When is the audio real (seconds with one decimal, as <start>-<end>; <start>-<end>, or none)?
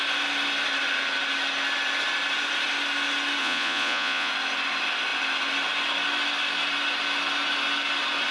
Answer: 0.0-3.4; 4.3-8.3